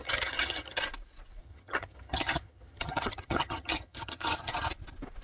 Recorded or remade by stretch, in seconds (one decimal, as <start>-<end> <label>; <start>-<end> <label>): 0.0-0.8 remade; 0.8-1.4 recorded; 1.4-4.5 remade; 4.5-5.2 recorded